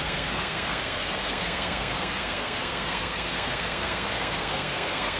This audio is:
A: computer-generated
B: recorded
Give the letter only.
A